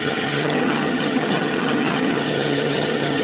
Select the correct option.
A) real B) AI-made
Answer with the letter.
B